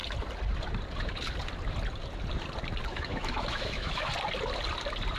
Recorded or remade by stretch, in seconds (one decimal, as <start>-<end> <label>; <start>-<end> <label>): 0.0-2.9 recorded; 2.9-4.1 remade; 4.1-5.2 recorded